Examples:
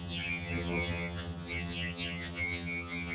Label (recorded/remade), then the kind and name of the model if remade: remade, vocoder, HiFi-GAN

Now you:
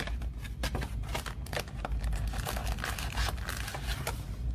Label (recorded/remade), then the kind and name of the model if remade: recorded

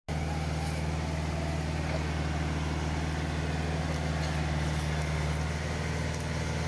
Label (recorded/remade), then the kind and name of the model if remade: recorded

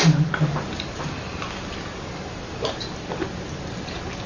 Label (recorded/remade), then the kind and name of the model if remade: recorded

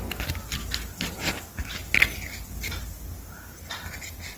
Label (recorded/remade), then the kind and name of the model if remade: recorded